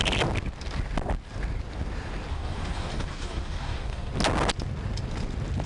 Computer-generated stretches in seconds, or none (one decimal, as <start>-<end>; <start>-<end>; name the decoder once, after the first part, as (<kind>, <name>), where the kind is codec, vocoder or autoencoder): 2.3-4.1 (codec, DAC)